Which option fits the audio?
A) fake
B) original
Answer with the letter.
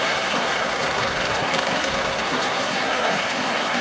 A